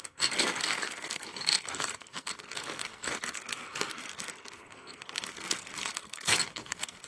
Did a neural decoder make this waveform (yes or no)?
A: yes